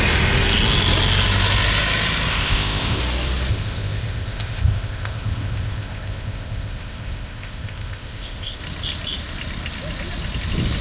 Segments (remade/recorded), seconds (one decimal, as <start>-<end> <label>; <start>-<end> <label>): 0.0-2.3 recorded; 2.3-3.0 remade; 3.0-3.5 recorded; 3.5-8.6 remade; 8.6-10.8 recorded